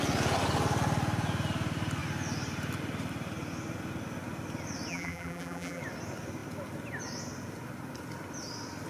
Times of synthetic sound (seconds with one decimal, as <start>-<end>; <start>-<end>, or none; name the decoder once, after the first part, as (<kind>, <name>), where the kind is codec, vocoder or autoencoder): 4.9-5.8 (vocoder, BigVGAN v2)

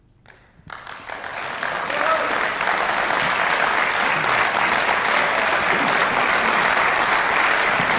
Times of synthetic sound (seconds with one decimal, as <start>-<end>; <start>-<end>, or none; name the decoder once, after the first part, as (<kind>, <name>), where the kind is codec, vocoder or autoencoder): none